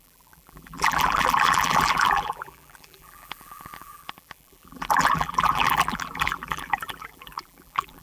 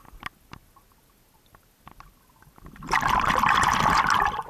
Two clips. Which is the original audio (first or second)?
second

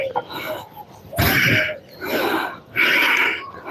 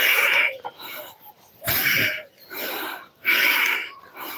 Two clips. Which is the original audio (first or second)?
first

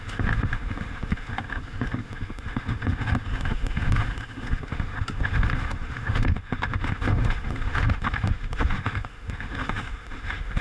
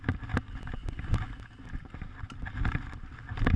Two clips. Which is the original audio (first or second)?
second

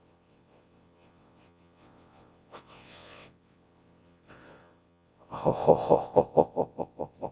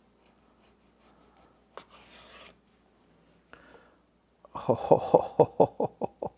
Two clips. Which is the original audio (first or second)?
second